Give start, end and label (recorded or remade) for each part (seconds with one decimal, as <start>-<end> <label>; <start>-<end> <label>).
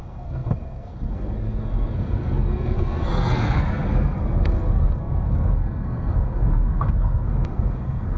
0.0-8.2 remade